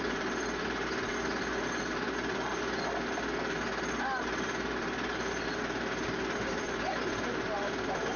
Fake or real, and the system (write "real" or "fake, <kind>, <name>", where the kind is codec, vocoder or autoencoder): real